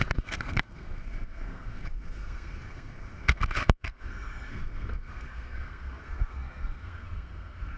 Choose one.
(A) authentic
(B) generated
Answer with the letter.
B